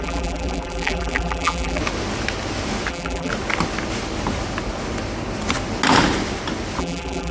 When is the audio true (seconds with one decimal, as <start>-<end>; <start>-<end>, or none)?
1.8-2.9; 3.3-6.8